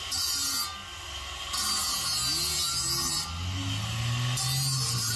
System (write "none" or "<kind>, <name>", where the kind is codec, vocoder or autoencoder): none